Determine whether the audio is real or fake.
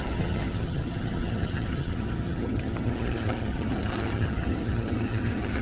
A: fake